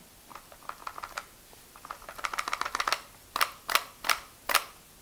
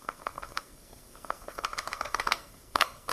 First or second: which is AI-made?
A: second